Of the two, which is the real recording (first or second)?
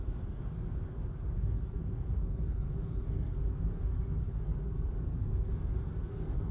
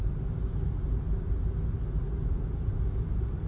second